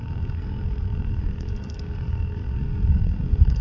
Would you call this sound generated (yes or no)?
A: yes